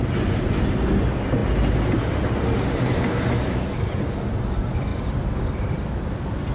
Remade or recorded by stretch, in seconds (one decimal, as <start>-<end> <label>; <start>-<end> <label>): 0.0-6.5 recorded